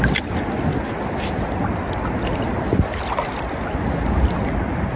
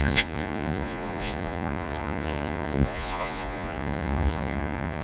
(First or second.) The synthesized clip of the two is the second